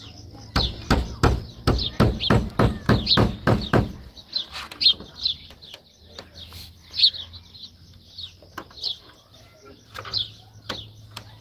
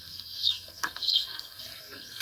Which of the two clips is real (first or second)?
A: first